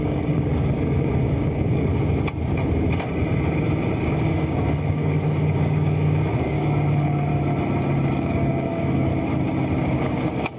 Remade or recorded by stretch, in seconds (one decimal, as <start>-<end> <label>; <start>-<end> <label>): 0.0-1.9 remade; 1.9-4.0 recorded; 4.0-7.3 remade; 7.3-8.1 recorded; 8.1-9.1 remade; 9.1-9.8 recorded; 9.8-10.6 remade